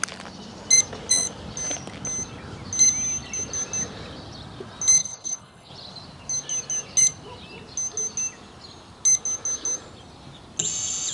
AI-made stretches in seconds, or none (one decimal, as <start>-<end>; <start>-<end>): 5.0-5.7